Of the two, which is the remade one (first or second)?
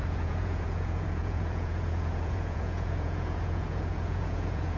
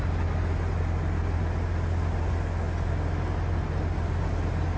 first